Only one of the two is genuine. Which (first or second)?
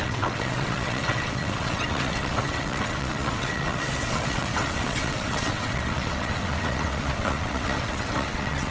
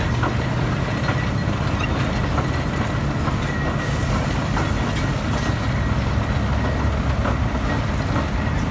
second